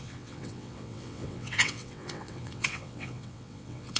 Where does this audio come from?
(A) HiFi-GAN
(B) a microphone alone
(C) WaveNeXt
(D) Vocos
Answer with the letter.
C